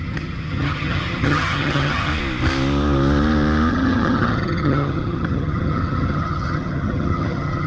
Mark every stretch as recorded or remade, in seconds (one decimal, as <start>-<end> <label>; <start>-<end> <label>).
0.0-2.1 remade; 2.1-3.7 recorded; 3.7-7.7 remade